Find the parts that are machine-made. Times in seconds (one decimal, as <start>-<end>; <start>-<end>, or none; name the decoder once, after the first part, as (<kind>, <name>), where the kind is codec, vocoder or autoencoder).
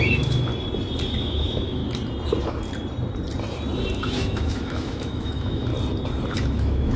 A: 0.0-0.5 (autoencoder, DAC-VAE); 1.2-1.8; 3.9-5.7; 6.3-7.0